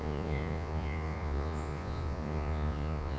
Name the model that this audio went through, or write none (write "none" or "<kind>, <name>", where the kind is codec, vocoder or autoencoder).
vocoder, Vocos